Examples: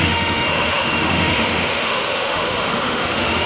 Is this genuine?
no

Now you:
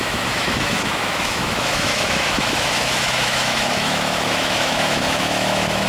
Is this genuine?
no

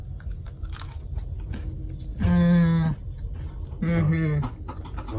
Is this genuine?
yes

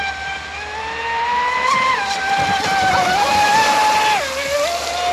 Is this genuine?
yes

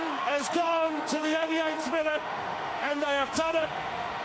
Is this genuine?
no